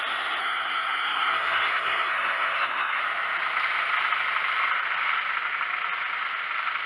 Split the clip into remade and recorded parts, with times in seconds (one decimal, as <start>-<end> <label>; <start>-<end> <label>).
0.0-0.4 recorded; 0.4-3.0 remade; 3.0-6.9 recorded